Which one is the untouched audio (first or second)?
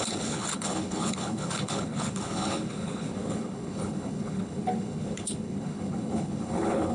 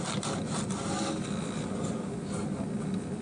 second